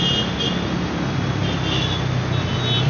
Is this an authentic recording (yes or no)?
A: yes